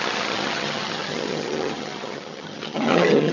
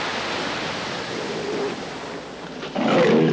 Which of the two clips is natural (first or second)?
second